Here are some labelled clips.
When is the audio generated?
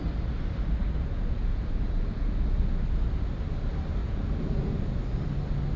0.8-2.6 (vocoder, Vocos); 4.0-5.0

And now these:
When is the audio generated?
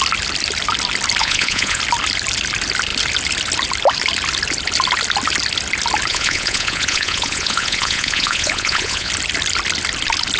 1.2-1.8 (vocoder, Vocos); 6.1-9.1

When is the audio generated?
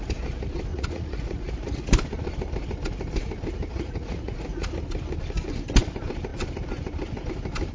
0.7-1.9 (vocoder, Vocos); 3.7-4.7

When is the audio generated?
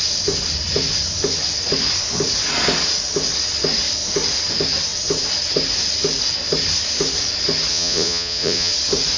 7.7-8.7 (vocoder, Vocos)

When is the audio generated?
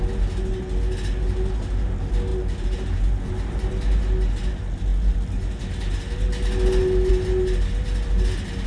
none